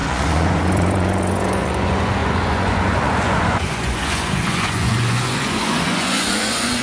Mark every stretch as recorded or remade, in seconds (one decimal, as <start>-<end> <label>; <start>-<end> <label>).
0.0-6.8 remade